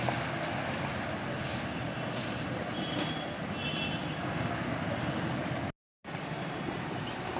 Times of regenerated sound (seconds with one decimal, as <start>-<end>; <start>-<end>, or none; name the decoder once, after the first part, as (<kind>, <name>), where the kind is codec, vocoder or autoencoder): 4.0-4.5 (codec, DAC)